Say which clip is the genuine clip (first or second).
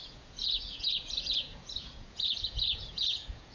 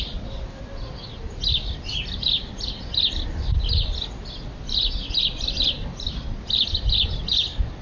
second